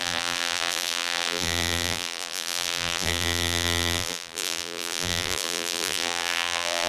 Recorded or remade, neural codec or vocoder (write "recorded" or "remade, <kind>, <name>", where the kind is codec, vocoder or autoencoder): remade, vocoder, BigVGAN v2